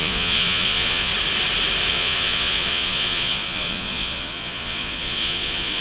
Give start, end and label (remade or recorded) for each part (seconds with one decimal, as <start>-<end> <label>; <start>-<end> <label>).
0.0-1.1 remade; 1.1-1.9 recorded; 1.9-5.8 remade